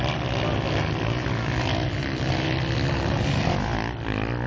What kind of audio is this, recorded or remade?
recorded